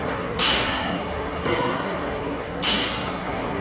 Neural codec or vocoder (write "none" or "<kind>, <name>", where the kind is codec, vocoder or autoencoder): codec, SNAC